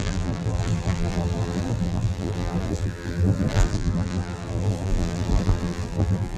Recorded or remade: remade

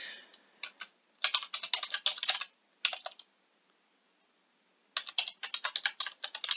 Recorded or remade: recorded